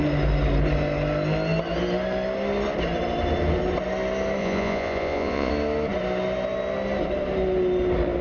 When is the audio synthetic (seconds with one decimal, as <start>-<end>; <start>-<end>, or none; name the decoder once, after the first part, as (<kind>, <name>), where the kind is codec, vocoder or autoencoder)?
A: 4.4-5.5 (vocoder, Vocos)